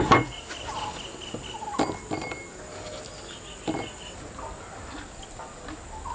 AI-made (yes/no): no